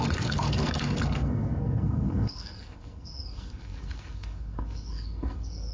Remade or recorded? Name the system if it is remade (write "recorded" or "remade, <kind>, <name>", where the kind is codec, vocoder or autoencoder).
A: remade, codec, SNAC